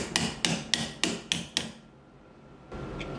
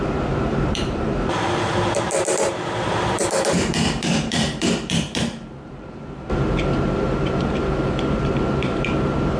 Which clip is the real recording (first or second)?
first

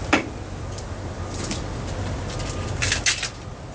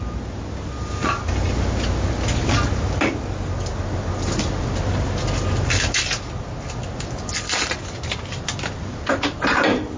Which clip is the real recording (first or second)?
second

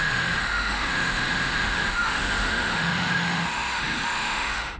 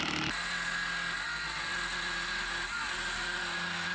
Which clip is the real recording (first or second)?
second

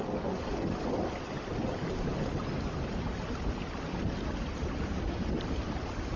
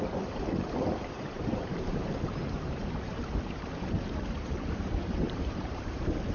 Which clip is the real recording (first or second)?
first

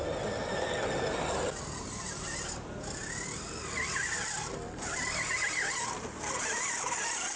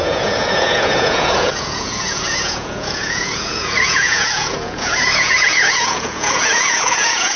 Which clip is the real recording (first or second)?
first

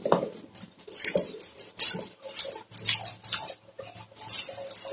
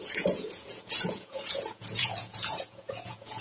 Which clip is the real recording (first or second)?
first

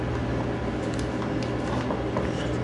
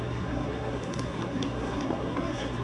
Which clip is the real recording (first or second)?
first